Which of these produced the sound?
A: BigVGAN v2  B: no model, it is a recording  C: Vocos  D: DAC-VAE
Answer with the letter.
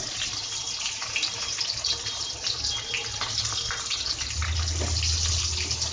B